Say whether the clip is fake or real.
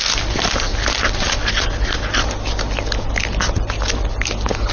real